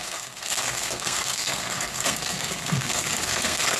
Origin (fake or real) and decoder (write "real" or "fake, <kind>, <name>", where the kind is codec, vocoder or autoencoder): fake, codec, SNAC